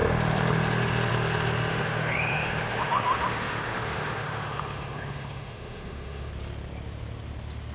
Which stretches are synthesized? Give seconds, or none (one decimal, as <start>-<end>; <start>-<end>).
1.7-6.3